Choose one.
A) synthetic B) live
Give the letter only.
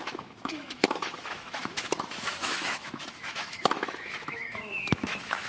A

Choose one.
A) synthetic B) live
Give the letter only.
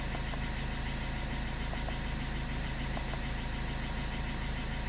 B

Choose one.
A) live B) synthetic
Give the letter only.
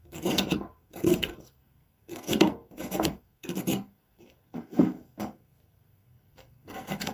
B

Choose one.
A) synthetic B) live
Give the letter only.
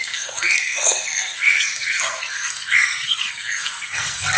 A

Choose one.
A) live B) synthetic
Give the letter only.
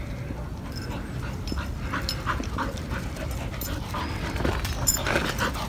B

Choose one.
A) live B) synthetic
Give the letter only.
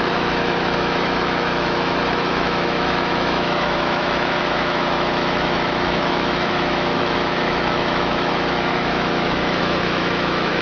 B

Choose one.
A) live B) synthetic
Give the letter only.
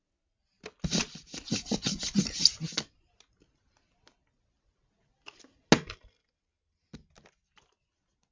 A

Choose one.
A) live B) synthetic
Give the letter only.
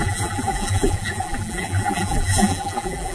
B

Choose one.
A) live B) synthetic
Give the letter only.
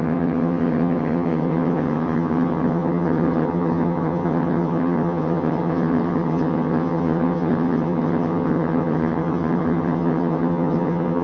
B